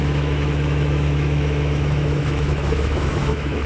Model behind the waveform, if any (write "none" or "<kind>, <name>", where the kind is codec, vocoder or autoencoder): autoencoder, DAC-VAE